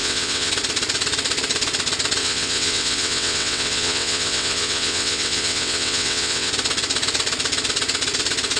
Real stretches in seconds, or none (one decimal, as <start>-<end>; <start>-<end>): 0.5-2.2; 6.5-8.6